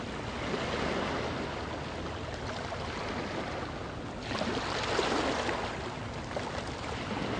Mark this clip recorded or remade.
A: recorded